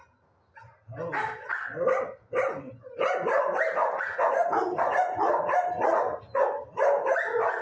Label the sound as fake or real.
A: real